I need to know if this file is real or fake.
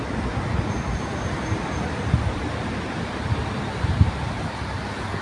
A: real